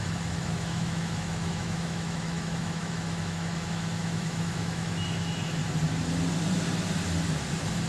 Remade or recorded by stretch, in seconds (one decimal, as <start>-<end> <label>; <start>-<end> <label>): 0.0-5.6 remade; 5.6-7.9 recorded